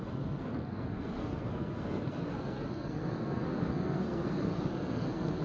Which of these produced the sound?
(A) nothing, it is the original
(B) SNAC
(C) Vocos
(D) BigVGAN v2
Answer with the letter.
B